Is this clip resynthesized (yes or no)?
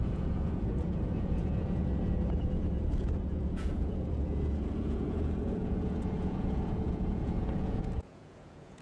yes